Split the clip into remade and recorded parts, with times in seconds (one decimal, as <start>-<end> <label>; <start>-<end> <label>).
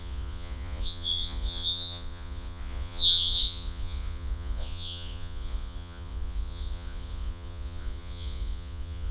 0.0-9.1 remade